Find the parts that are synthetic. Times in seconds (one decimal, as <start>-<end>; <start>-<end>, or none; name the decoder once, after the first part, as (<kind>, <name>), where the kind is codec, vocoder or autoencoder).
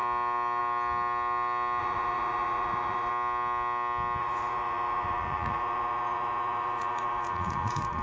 1.8-3.1 (vocoder, Vocos); 4.2-8.0